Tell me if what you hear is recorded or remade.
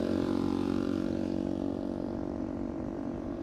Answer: remade